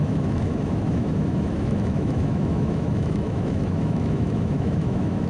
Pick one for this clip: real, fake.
fake